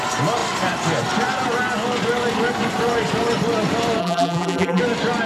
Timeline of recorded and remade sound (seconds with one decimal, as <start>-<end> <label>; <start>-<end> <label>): 0.0-4.0 recorded; 4.0-4.8 remade; 4.8-5.3 recorded